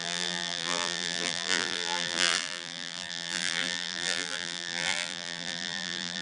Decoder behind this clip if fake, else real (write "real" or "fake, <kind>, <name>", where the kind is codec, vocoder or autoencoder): fake, vocoder, BigVGAN v2